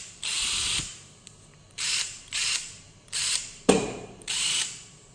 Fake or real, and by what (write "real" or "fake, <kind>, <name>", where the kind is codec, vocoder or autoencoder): fake, vocoder, BigVGAN v2